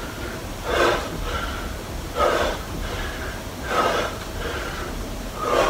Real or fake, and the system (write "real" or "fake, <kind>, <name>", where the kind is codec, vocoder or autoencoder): real